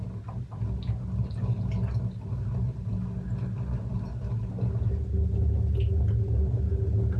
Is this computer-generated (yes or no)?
no